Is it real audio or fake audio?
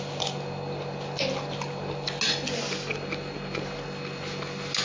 real